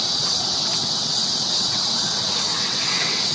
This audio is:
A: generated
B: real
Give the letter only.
A